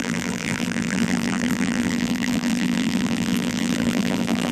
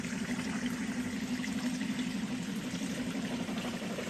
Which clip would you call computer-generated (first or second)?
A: first